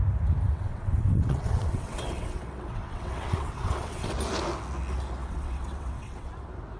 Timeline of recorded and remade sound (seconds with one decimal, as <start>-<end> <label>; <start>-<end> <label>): 0.0-0.4 recorded; 0.4-4.1 remade; 4.1-5.2 recorded; 5.2-6.3 remade; 6.3-6.8 recorded